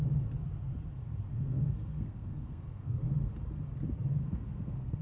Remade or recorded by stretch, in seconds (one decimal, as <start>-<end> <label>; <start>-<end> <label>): 0.0-1.3 recorded; 1.3-3.0 remade; 3.0-4.1 recorded; 4.1-5.0 remade